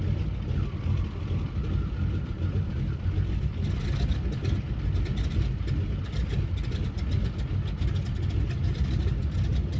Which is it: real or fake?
real